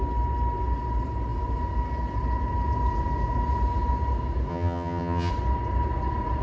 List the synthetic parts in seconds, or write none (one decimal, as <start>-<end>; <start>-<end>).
4.5-5.3